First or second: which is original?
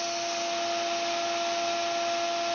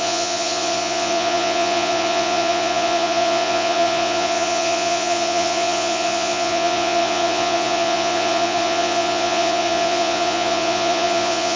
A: first